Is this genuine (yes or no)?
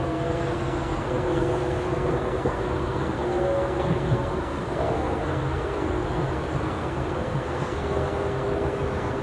no